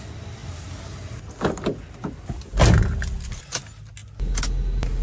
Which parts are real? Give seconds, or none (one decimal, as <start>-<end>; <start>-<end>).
0.0-5.0